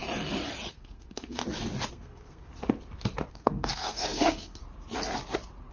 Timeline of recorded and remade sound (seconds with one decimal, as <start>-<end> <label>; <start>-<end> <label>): 0.0-0.7 recorded; 0.7-1.4 remade; 1.4-1.9 recorded; 1.9-2.5 remade; 2.5-3.3 recorded; 3.3-4.6 remade; 4.6-5.7 recorded